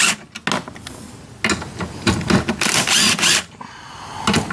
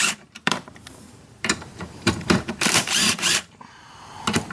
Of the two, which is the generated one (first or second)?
second